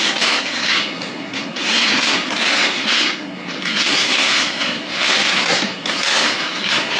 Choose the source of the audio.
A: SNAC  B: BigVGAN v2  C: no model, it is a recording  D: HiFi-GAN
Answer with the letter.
A